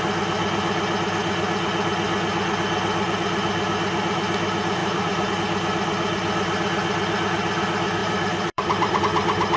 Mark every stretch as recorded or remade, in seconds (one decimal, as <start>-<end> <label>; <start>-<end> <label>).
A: 0.0-4.8 recorded; 4.8-5.3 remade; 5.3-8.0 recorded; 8.0-9.0 remade; 9.0-9.6 recorded